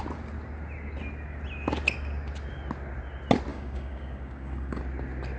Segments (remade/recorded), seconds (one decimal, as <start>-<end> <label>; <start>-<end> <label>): 0.0-3.5 recorded; 3.5-4.8 remade; 4.8-5.4 recorded